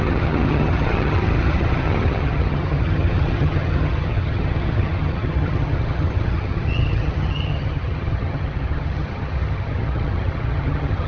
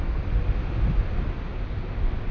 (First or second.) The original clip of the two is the second